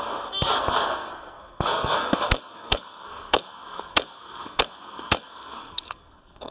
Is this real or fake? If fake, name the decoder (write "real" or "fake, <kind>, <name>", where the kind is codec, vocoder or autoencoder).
fake, codec, SNAC